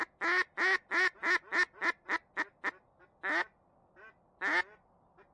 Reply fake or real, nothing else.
real